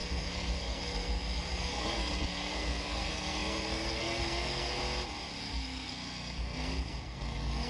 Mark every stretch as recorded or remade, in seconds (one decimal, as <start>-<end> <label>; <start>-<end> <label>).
0.0-4.8 remade; 4.8-5.4 recorded; 5.4-7.7 remade

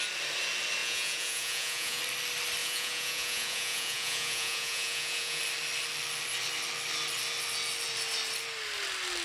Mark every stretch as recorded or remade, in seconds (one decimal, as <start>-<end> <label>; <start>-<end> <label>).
0.0-0.8 recorded; 0.8-2.0 remade; 2.0-2.6 recorded; 2.6-5.4 remade; 5.4-9.2 recorded